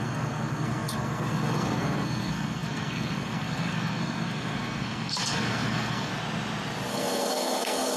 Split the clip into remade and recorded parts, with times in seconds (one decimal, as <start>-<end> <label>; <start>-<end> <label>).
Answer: 0.0-6.1 remade; 6.1-6.9 recorded; 6.9-8.0 remade